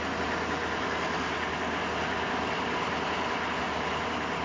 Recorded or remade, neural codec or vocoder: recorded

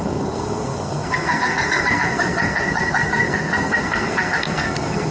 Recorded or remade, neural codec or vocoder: remade, codec, SNAC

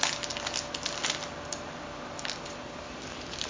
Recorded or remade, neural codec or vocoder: recorded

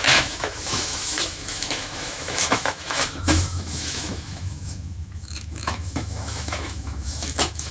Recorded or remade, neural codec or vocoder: remade, autoencoder, DAC-VAE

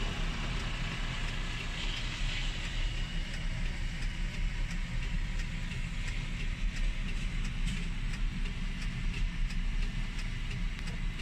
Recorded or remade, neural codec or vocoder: recorded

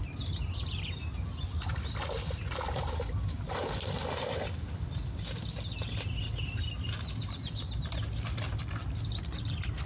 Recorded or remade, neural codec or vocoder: recorded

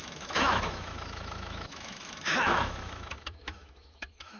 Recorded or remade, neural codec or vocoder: remade, autoencoder, DAC-VAE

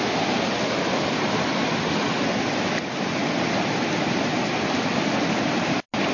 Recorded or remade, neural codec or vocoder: recorded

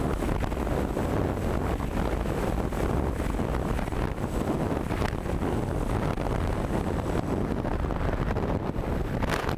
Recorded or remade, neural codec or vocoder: recorded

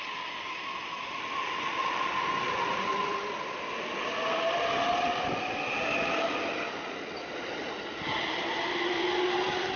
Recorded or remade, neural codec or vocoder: recorded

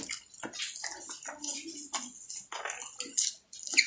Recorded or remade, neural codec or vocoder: recorded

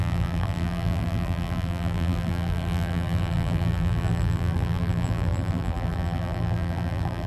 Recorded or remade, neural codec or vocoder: remade, vocoder, BigVGAN v2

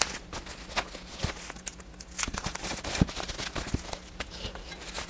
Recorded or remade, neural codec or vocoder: recorded